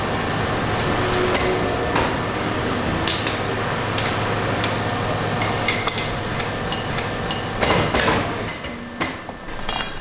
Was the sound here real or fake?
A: real